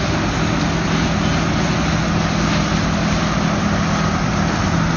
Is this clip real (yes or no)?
yes